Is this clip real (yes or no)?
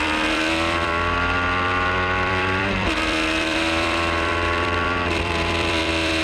no